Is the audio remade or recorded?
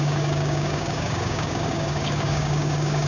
remade